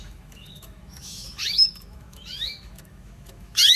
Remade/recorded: remade